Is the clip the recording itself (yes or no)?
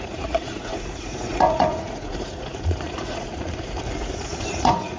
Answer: no